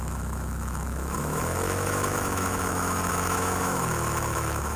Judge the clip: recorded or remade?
remade